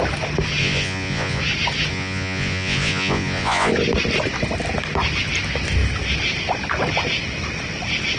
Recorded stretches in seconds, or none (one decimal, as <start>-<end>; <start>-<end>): 0.0-0.6; 1.4-1.9; 3.7-8.2